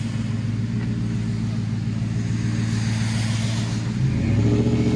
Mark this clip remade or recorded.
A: recorded